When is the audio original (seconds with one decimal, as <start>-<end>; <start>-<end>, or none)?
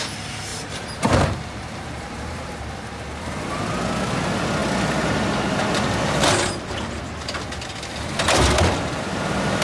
0.0-0.5; 2.8-4.6; 6.3-9.6